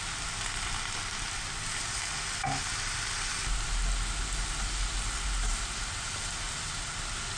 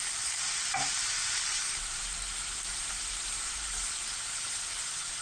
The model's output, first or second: second